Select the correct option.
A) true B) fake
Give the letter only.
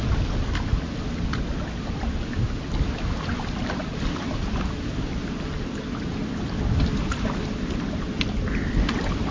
A